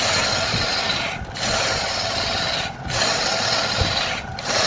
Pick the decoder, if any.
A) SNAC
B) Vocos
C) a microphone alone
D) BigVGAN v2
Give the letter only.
C